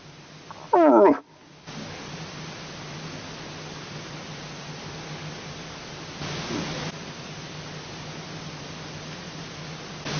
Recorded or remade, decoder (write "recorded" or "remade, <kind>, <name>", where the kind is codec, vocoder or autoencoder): recorded